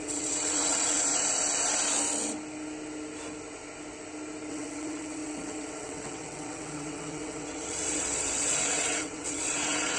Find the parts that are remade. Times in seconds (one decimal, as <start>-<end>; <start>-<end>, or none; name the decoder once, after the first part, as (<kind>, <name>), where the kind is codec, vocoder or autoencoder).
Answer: 0.0-1.1 (vocoder, WaveNeXt); 4.5-10.0